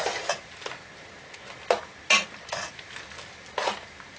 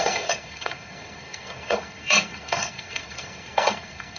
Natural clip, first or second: first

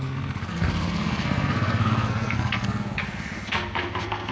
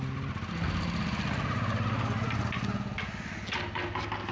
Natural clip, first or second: second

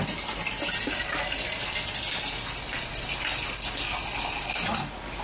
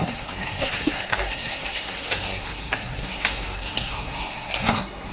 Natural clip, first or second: first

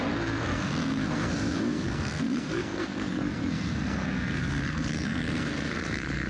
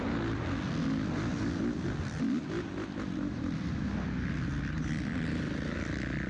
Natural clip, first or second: second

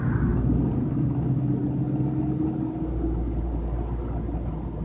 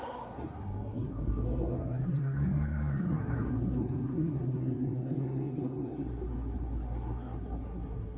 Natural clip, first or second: first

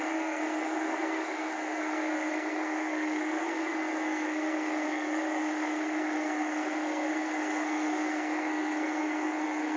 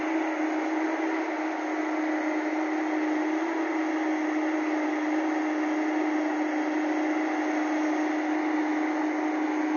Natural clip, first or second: second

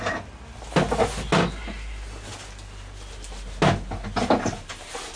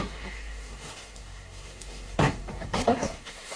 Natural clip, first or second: first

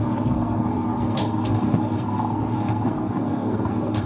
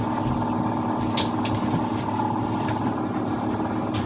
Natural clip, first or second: second